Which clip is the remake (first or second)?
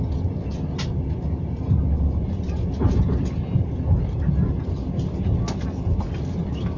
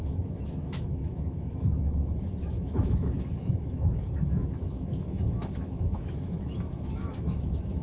second